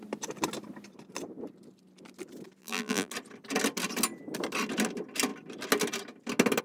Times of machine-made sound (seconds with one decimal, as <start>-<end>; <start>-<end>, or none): 2.6-3.1